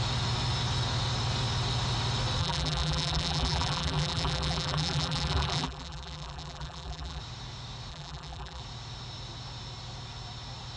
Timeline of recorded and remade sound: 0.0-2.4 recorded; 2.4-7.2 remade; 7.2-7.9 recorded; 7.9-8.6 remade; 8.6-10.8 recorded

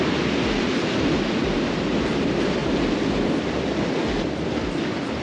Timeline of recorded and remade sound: 0.0-5.2 recorded

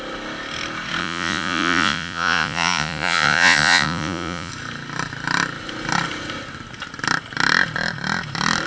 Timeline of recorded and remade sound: 0.0-1.0 recorded; 1.0-4.5 remade; 4.5-8.7 recorded

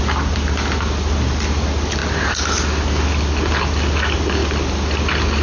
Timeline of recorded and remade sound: 0.0-5.4 recorded

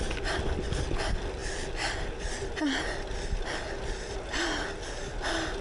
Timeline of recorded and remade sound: 0.0-5.6 recorded

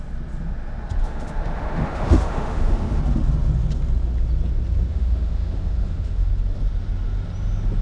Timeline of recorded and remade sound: 0.0-1.0 recorded; 1.0-3.0 remade; 3.0-4.9 recorded; 4.9-6.3 remade; 6.3-7.8 recorded

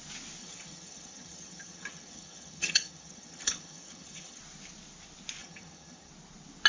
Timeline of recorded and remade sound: 0.0-0.4 recorded; 0.4-4.4 remade; 4.4-5.4 recorded; 5.4-6.1 remade; 6.1-6.7 recorded